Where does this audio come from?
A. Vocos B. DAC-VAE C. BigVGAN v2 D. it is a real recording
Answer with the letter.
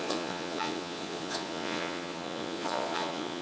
A